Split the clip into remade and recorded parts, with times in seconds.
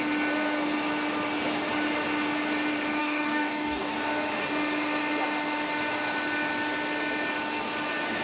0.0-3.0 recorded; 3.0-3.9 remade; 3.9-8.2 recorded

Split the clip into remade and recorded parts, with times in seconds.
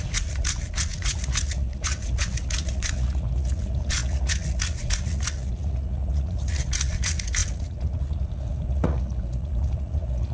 0.0-10.3 remade